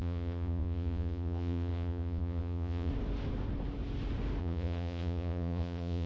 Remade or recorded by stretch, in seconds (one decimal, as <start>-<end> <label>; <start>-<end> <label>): 0.0-2.9 remade; 2.9-4.4 recorded; 4.4-6.1 remade